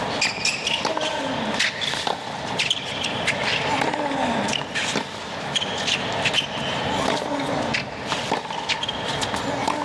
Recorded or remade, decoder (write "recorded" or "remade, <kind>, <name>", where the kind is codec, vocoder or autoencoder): recorded